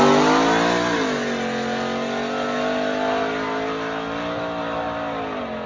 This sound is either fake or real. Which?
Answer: real